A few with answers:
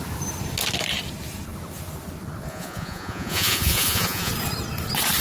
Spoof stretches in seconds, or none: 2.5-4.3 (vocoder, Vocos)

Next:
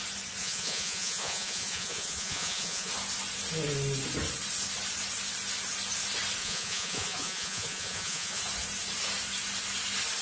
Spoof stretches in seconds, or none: 0.4-2.9 (vocoder, Vocos); 6.4-8.4